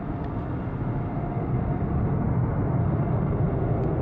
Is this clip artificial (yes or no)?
no